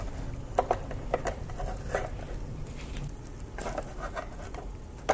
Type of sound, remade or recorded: recorded